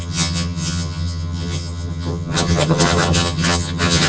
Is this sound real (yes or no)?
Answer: no